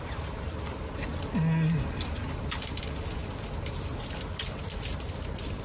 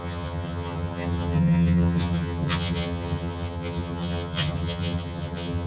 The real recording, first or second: first